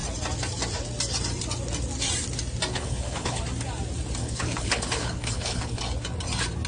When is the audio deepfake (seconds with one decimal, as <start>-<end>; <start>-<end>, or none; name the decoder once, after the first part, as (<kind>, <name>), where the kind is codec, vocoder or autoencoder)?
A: 2.7-3.4 (codec, HILCodec); 4.2-5.8